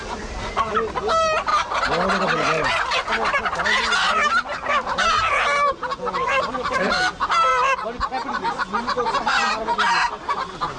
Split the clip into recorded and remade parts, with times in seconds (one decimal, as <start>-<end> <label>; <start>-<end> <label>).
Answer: 0.0-10.8 recorded